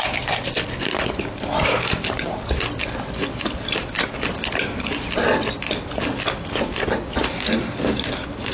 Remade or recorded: recorded